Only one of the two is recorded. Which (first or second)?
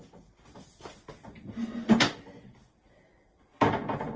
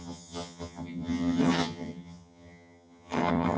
first